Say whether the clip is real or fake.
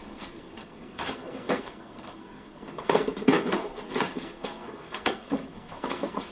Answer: fake